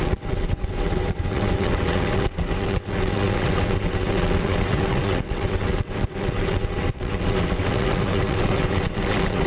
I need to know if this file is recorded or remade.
remade